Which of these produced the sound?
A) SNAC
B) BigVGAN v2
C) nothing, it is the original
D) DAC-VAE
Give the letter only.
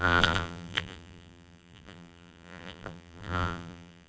B